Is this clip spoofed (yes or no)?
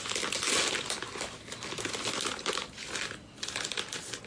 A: no